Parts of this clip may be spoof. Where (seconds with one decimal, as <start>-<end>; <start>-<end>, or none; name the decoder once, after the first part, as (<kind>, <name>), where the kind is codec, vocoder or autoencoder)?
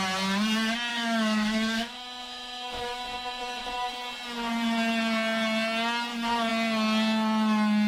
0.9-3.9 (autoencoder, DAC-VAE)